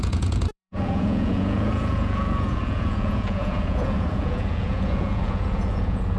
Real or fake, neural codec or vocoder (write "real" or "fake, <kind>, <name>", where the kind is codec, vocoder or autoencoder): fake, vocoder, Vocos